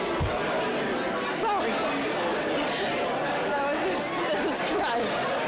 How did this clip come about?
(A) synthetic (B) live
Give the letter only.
B